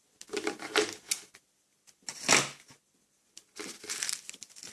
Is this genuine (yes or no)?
yes